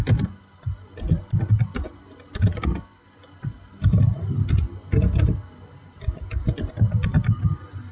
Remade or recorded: recorded